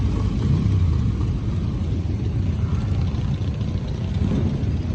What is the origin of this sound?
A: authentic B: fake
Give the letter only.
A